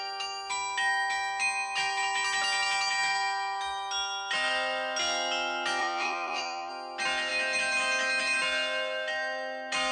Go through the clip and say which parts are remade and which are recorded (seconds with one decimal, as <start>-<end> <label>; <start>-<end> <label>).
0.0-5.8 recorded; 5.8-6.7 remade; 6.7-9.9 recorded